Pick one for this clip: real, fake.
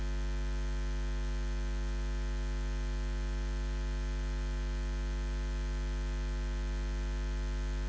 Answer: real